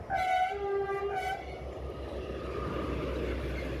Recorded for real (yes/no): yes